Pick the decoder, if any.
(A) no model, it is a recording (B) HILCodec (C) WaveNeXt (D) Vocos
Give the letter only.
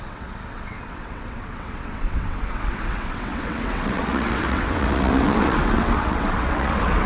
C